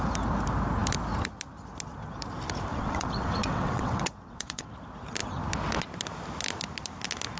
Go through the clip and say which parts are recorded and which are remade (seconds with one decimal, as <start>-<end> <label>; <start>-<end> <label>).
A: 0.0-2.7 recorded; 2.7-4.7 remade; 4.7-7.4 recorded

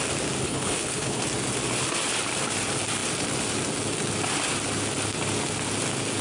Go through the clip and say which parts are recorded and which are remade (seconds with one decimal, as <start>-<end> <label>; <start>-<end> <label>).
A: 0.0-0.4 recorded; 0.4-1.2 remade; 1.2-6.2 recorded

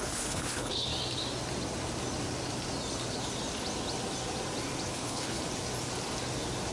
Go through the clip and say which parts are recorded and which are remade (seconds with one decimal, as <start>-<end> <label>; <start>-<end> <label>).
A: 0.0-0.9 remade; 0.9-4.9 recorded; 4.9-5.4 remade; 5.4-6.7 recorded

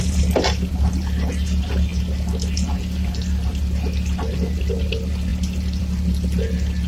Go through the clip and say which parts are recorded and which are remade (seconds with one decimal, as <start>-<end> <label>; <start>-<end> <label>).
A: 0.0-6.9 recorded

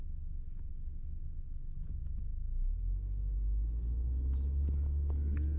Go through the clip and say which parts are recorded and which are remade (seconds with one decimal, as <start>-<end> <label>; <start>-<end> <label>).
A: 0.0-0.7 remade; 0.7-5.6 recorded

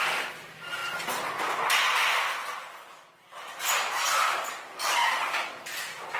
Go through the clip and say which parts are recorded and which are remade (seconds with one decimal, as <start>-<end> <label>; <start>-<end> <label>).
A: 0.0-6.2 recorded

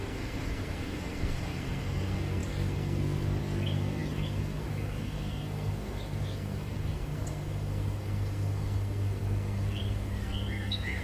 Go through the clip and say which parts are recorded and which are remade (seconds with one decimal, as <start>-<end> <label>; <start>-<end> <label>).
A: 0.0-11.0 remade